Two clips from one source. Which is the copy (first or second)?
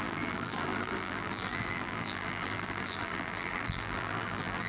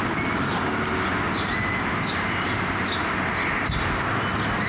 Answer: first